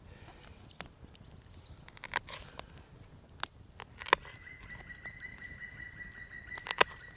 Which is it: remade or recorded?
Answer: recorded